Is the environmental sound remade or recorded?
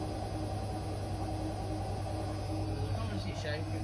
recorded